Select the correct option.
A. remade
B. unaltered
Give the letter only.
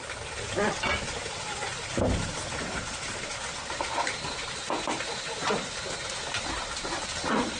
B